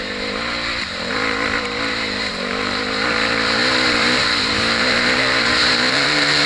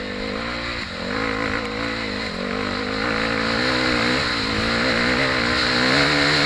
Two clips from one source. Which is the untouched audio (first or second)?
second